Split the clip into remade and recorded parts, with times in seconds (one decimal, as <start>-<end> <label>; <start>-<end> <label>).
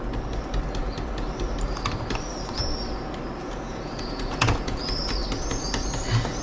0.0-3.4 recorded; 3.4-4.8 remade; 4.8-6.4 recorded